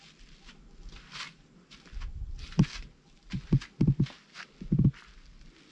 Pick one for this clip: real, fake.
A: real